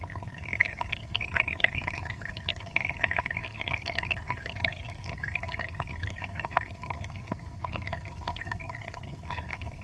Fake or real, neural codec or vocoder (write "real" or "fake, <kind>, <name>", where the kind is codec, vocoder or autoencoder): fake, codec, SNAC